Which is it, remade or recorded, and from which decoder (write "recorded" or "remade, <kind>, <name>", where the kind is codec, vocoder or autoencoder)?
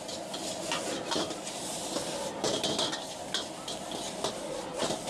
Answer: recorded